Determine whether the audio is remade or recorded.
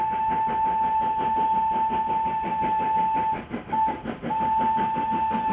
recorded